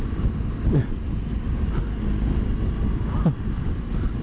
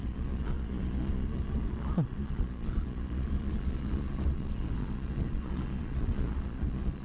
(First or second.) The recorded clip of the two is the first